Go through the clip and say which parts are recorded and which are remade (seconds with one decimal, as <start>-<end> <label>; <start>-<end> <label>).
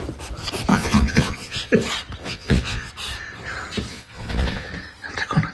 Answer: 0.0-0.7 recorded; 0.7-1.7 remade; 1.7-2.2 recorded; 2.2-2.9 remade; 2.9-3.9 recorded; 3.9-4.7 remade; 4.7-5.5 recorded